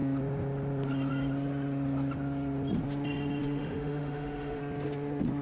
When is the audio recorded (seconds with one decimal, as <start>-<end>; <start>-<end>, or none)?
0.0-3.4; 4.6-5.4